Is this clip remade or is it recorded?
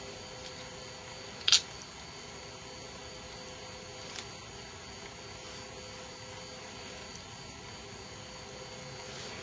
recorded